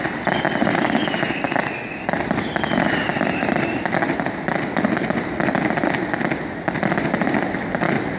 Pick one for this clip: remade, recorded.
recorded